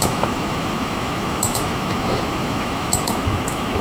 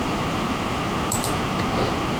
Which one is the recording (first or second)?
second